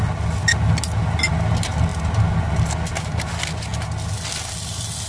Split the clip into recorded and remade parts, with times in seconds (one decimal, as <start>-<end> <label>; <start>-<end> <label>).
0.0-5.1 recorded